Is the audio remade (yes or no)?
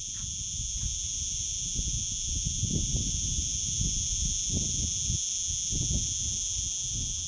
no